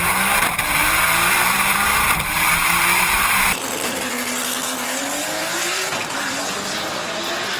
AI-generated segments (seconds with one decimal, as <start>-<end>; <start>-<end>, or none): 0.8-4.1; 5.0-6.4